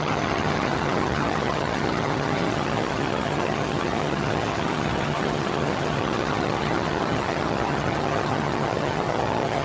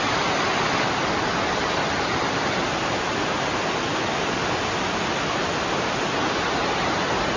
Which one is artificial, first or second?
first